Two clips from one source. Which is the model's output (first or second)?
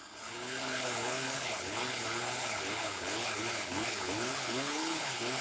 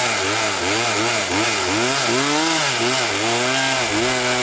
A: first